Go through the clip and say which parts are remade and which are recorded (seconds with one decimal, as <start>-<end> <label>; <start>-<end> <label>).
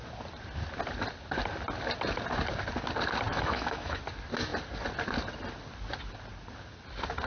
0.0-3.3 recorded; 3.3-4.0 remade; 4.0-7.3 recorded